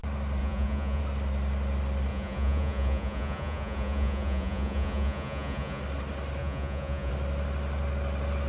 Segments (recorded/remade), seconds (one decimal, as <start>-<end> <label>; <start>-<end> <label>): 0.0-0.4 recorded; 0.4-1.0 remade; 1.0-2.1 recorded; 2.1-5.8 remade; 5.8-6.4 recorded; 6.4-7.1 remade; 7.1-8.5 recorded